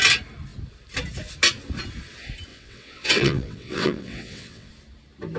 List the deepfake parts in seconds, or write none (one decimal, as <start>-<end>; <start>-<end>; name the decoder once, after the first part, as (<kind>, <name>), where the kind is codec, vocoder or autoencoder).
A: 2.5-4.7 (vocoder, WaveNeXt)